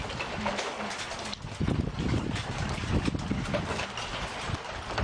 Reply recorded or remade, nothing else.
recorded